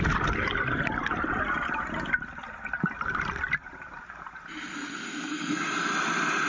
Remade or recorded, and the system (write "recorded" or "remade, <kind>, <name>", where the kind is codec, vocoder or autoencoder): recorded